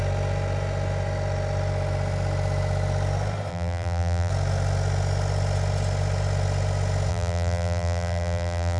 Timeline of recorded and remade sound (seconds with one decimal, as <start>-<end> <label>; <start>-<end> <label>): 0.0-3.5 recorded; 3.5-4.3 remade; 4.3-7.1 recorded; 7.1-8.8 remade